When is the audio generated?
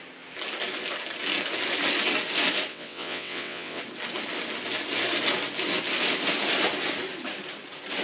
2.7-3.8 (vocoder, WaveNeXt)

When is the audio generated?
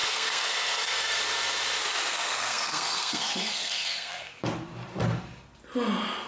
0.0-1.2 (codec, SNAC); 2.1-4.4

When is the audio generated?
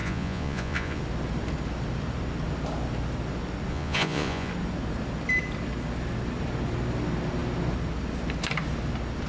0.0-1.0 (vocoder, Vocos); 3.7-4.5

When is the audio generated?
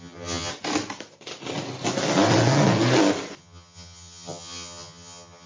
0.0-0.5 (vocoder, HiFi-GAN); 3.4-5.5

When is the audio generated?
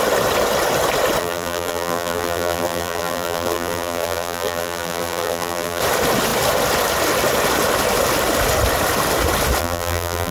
1.2-5.8 (vocoder, BigVGAN v2); 9.6-10.3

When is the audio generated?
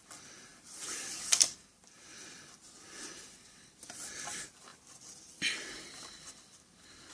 0.5-2.5 (vocoder, BigVGAN v2); 4.7-5.7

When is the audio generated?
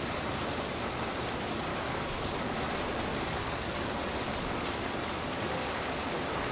1.7-2.6 (codec, DAC); 3.1-6.1